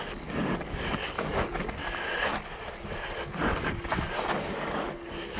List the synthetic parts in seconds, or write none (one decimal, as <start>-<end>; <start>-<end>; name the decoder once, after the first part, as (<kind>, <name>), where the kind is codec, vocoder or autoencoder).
0.0-1.8 (codec, DAC); 3.4-5.4